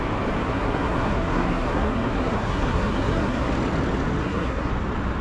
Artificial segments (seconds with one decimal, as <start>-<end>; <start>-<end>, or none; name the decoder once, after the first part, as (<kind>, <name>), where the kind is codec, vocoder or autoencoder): 0.4-3.5 (codec, SNAC); 4.2-4.7